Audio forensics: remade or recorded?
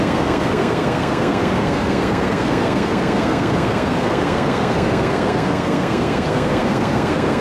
remade